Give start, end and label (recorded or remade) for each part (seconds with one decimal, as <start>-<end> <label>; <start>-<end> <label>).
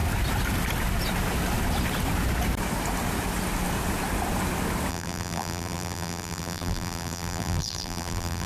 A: 0.0-4.9 recorded; 4.9-8.5 remade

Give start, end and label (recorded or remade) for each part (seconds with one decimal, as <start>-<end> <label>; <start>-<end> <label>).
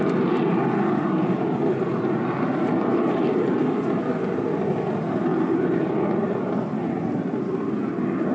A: 0.0-8.3 recorded